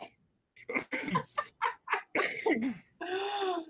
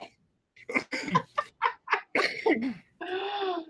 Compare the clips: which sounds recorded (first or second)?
first